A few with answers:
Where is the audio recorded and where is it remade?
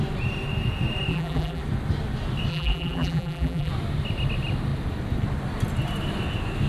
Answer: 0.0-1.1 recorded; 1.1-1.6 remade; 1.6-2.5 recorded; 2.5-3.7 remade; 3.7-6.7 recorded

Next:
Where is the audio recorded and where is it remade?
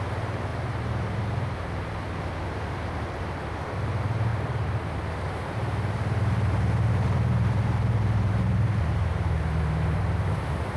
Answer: 0.0-10.8 remade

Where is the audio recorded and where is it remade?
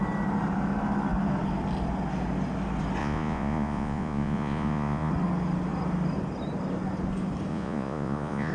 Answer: 0.0-3.0 recorded; 3.0-5.1 remade; 5.1-7.5 recorded; 7.5-8.5 remade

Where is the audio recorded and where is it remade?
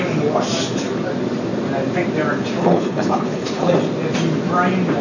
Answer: 0.0-2.6 recorded; 2.6-3.7 remade; 3.7-5.0 recorded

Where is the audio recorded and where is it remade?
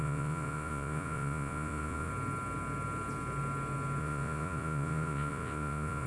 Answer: 0.0-2.1 remade; 2.1-4.0 recorded; 4.0-6.1 remade